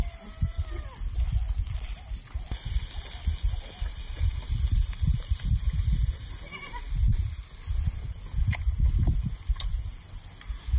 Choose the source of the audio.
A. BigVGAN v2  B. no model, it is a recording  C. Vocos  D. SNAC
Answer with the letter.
B